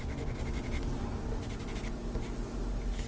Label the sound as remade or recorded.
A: recorded